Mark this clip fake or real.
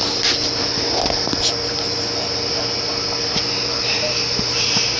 real